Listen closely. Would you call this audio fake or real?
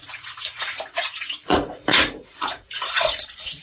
fake